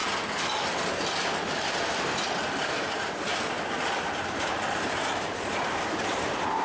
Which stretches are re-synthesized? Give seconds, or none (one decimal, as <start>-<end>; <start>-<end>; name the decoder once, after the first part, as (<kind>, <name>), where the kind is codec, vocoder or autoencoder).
2.6-3.3 (vocoder, BigVGAN v2); 4.2-6.6